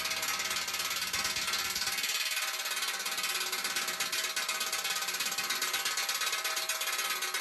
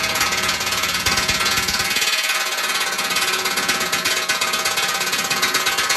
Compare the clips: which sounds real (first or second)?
first